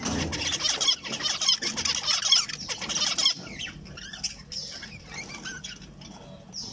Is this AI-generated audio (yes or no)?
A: no